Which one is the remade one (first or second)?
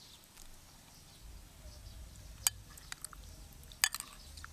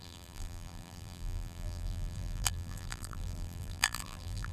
second